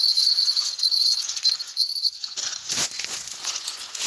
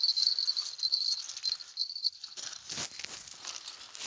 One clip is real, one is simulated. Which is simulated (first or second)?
first